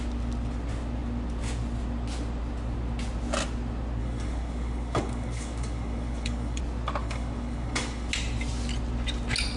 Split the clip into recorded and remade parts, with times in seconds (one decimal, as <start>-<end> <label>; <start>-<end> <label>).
0.0-4.0 recorded; 4.0-6.6 remade; 6.6-7.0 recorded; 7.0-8.1 remade; 8.1-9.6 recorded